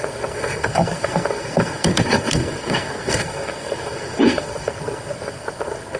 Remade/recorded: remade